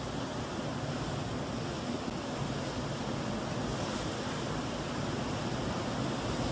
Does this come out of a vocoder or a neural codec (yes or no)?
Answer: no